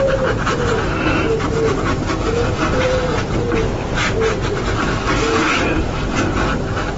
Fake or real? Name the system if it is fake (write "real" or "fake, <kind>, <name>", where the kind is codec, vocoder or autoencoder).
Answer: real